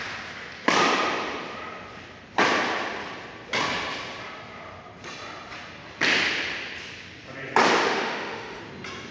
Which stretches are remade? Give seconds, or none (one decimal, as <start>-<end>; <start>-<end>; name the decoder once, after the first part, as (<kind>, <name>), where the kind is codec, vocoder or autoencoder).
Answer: 7.8-8.6 (autoencoder, DAC-VAE)